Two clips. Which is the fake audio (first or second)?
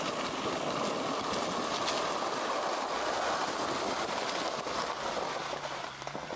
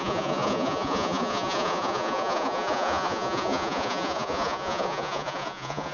second